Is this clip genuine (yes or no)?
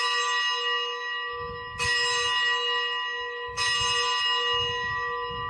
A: yes